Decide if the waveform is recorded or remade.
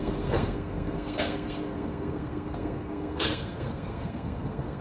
remade